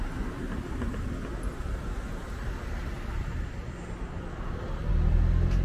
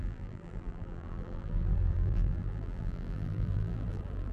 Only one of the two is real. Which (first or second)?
first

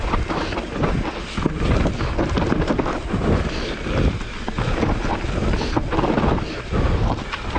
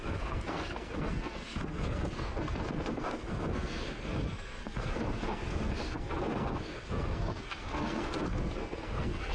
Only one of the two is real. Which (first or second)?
first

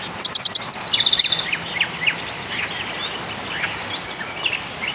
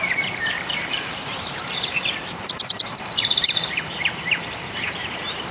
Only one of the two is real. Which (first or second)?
first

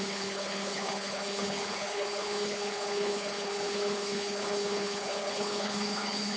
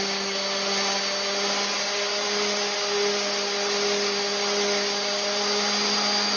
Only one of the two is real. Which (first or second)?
second